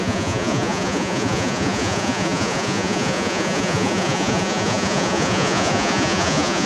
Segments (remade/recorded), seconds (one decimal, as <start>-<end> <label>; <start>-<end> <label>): 0.0-6.7 remade